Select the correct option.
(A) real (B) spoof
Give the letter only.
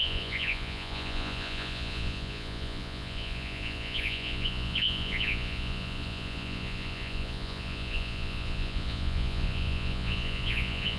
B